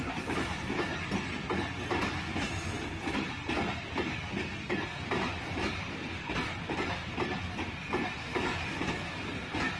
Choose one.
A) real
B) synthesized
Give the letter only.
B